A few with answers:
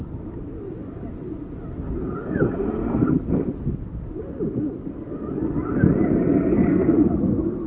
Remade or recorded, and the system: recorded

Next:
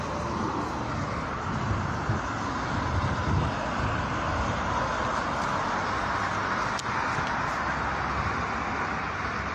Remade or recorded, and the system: recorded